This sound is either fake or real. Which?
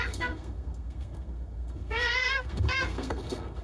fake